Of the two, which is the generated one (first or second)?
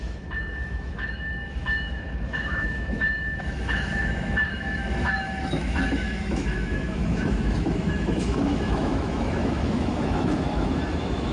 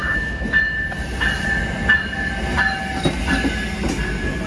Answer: first